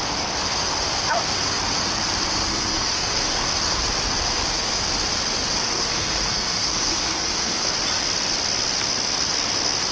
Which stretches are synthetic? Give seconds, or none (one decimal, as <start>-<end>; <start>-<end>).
2.5-3.5; 5.6-7.7